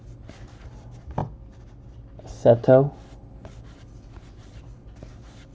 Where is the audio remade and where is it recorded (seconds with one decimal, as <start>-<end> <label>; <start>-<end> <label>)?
0.0-5.5 recorded

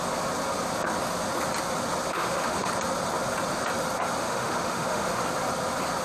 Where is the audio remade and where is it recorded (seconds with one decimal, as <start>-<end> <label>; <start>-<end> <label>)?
0.0-2.1 recorded; 2.1-2.7 remade; 2.7-4.2 recorded; 4.2-5.2 remade; 5.2-6.0 recorded

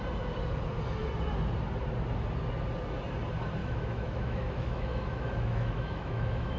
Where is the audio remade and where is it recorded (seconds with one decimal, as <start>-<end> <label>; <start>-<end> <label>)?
0.0-3.6 recorded; 3.6-6.6 remade

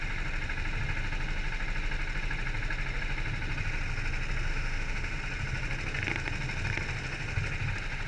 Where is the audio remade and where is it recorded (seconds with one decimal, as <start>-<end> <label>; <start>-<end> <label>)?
0.0-4.5 recorded; 4.5-5.2 remade; 5.2-8.1 recorded